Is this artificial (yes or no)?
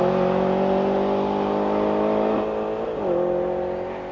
no